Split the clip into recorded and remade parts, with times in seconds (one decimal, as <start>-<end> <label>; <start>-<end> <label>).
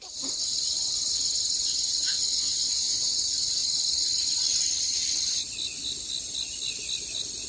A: 0.0-2.1 recorded; 2.1-3.0 remade; 3.0-7.5 recorded